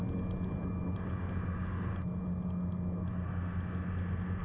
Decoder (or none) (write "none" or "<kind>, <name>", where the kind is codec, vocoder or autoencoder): none